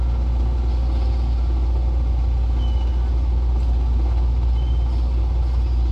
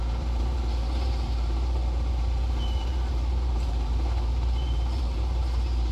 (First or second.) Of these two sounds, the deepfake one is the second